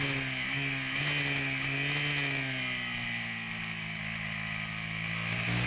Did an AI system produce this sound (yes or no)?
no